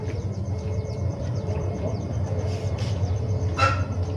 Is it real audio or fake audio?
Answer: fake